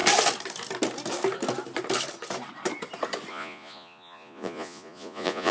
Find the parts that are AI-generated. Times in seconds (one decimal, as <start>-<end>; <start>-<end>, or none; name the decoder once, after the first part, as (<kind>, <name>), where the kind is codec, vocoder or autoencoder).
3.3-5.5 (vocoder, Vocos)